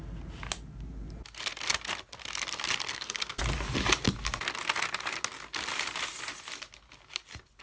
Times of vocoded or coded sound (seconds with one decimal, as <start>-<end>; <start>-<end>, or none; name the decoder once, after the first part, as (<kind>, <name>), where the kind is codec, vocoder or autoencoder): 2.9-3.4 (codec, SNAC)